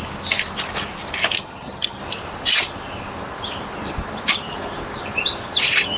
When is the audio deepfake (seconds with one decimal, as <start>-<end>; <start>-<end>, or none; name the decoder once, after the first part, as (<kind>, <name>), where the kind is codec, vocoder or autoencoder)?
1.4-2.0 (vocoder, HiFi-GAN)